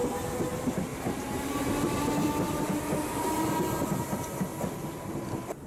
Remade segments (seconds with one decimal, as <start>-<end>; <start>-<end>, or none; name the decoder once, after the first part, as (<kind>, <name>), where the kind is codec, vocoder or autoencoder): none